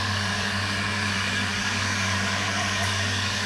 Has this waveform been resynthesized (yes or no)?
yes